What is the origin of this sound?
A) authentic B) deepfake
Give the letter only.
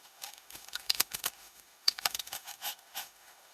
B